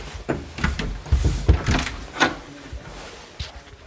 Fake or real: fake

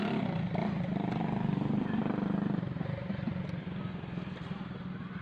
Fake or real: fake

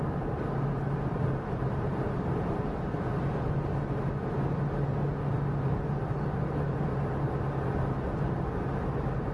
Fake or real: fake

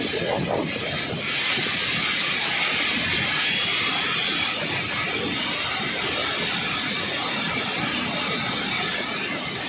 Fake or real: real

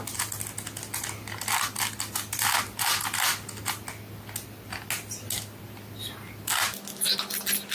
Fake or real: real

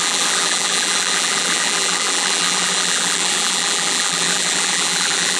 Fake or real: fake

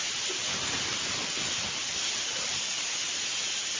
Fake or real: real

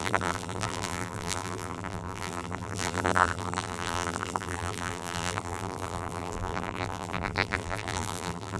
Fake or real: fake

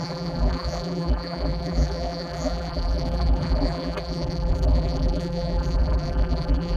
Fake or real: fake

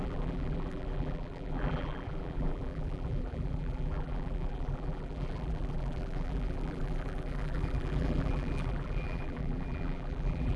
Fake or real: fake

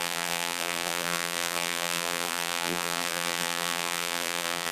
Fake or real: fake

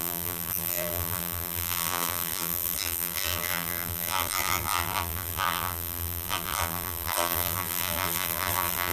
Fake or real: fake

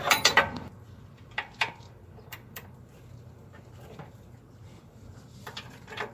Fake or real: fake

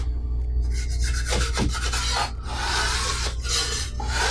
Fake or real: real